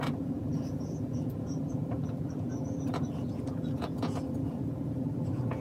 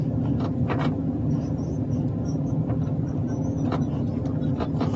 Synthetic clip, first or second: first